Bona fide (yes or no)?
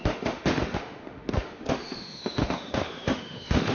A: no